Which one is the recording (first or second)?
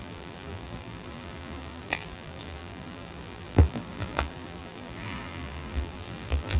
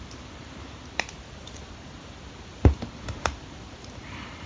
second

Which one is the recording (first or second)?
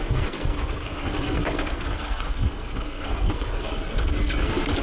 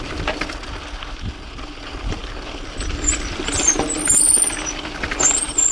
second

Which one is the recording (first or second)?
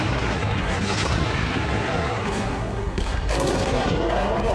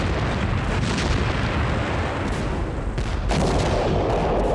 second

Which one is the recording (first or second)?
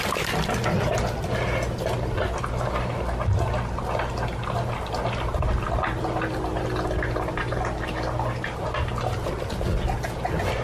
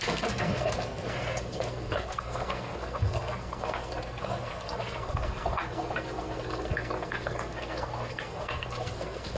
first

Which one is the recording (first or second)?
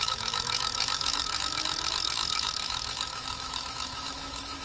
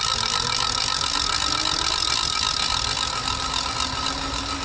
second